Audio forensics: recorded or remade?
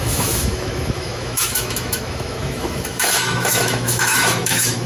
remade